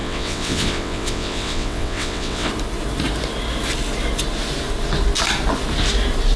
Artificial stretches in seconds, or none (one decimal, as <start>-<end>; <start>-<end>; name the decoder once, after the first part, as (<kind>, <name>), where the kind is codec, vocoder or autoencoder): 0.0-2.5 (vocoder, WaveNeXt)